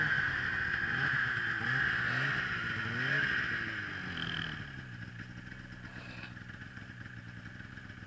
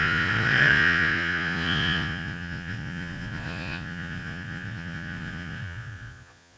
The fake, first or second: second